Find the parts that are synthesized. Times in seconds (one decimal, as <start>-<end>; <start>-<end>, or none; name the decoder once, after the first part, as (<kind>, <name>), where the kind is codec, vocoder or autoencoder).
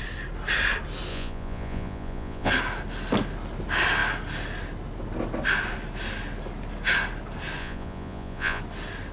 1.1-2.5 (vocoder, Vocos); 7.6-8.6